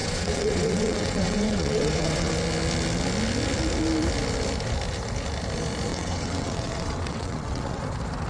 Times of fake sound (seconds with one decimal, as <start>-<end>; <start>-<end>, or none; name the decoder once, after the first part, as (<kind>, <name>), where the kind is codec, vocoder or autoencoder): 0.0-2.3 (vocoder, WaveNeXt); 5.9-7.8